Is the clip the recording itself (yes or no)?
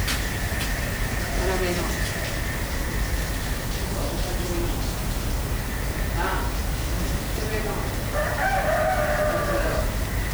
yes